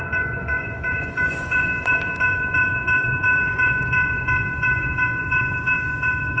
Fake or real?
fake